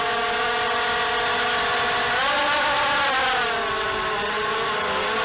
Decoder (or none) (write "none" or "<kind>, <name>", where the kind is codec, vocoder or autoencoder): none